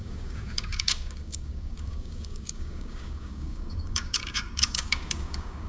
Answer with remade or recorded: remade